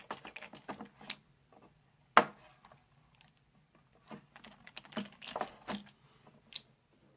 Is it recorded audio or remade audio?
recorded